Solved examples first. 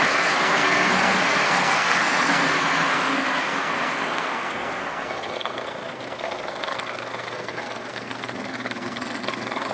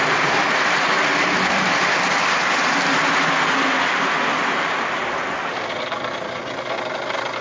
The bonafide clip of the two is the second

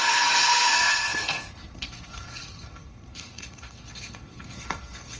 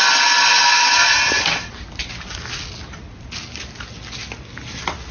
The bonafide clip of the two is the second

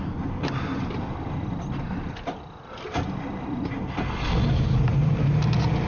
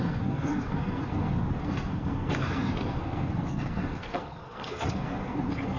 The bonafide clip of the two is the first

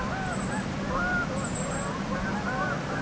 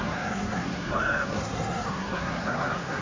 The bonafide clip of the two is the first